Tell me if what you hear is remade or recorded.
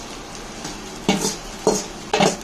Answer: recorded